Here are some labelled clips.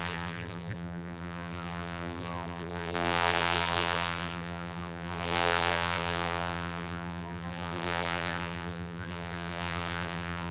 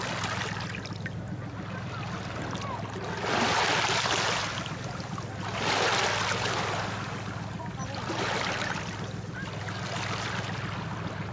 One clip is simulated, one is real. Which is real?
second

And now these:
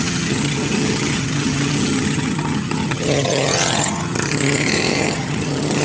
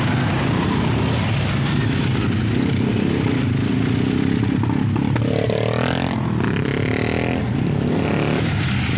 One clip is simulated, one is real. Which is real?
second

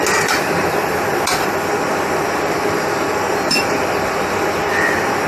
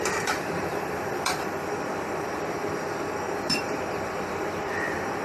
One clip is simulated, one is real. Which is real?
first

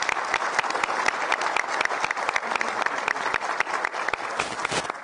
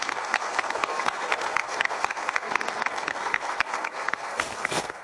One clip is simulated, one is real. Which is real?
first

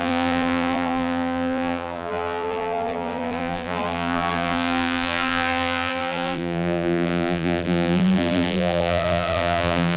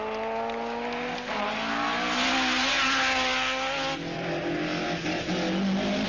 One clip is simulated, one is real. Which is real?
second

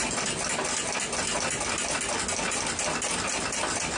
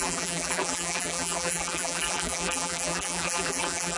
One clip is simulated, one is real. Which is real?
first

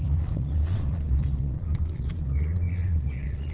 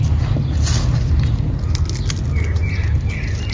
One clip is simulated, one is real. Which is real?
second